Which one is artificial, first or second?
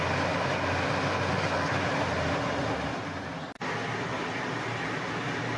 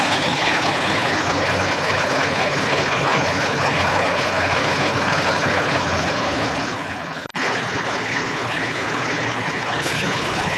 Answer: second